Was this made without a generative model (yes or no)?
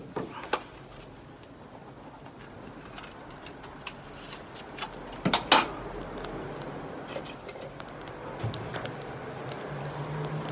yes